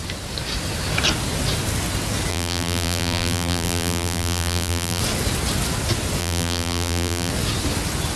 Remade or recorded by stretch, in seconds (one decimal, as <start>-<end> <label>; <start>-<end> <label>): 0.0-2.3 recorded; 2.3-5.0 remade; 5.0-6.2 recorded; 6.2-7.3 remade; 7.3-8.2 recorded